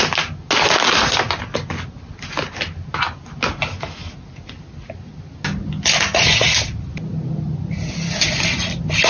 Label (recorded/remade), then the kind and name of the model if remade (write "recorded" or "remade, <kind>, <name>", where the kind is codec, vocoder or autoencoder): recorded